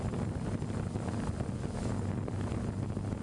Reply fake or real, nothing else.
real